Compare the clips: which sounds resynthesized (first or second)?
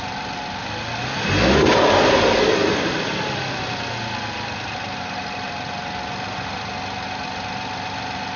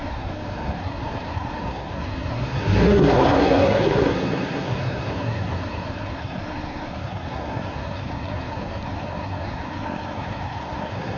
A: second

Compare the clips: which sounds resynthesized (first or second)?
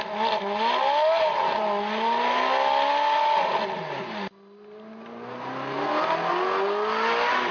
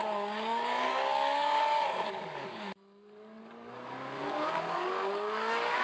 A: second